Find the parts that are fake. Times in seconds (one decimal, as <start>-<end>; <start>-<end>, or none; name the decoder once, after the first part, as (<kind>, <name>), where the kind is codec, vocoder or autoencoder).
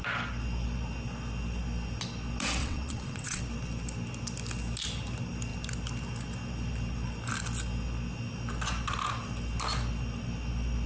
2.6-3.4 (vocoder, WaveNeXt)